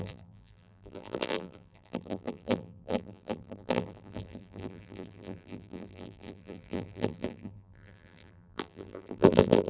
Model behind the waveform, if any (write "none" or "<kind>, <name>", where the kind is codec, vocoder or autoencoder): vocoder, BigVGAN v2